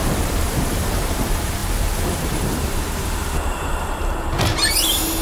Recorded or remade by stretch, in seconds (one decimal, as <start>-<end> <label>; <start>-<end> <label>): 0.0-5.2 remade